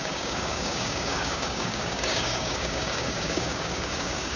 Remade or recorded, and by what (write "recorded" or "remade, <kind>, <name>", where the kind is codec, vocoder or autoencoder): remade, codec, DAC